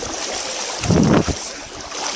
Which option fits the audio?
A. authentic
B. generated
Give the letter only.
A